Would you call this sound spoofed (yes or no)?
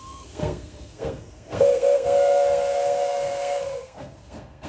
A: yes